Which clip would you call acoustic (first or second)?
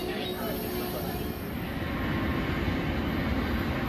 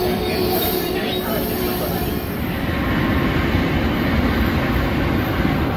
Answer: first